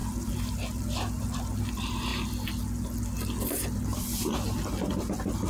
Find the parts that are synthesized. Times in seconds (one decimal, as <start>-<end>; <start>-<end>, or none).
0.0-1.6; 3.9-4.8